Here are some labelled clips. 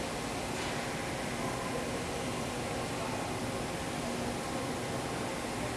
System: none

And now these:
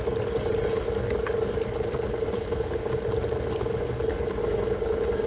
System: none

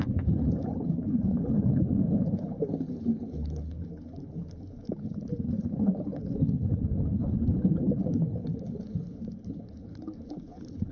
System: codec, HILCodec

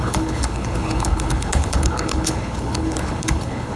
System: codec, HILCodec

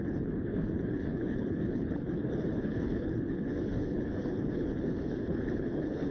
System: codec, HILCodec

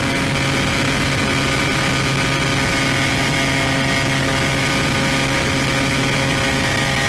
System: none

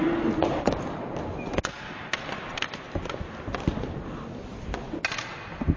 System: none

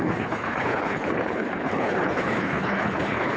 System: codec, HILCodec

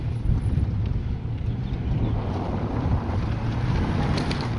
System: none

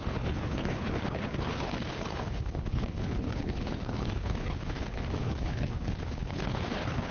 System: codec, HILCodec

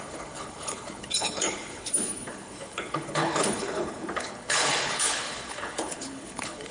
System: codec, HILCodec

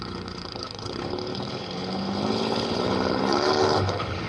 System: codec, HILCodec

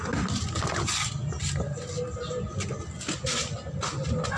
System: none